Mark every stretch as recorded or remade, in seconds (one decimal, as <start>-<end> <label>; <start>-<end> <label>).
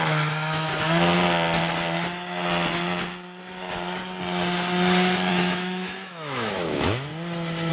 0.0-0.7 remade; 0.7-5.3 recorded; 5.3-7.1 remade; 7.1-7.7 recorded